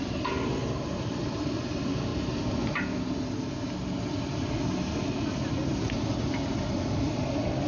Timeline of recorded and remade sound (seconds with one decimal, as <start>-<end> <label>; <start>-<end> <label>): 0.0-2.1 remade; 2.1-6.7 recorded; 6.7-7.7 remade